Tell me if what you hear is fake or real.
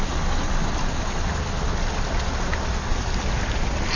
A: real